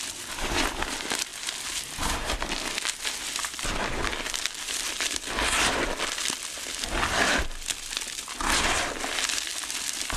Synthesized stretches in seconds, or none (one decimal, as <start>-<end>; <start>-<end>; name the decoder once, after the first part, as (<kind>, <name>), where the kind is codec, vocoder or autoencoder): none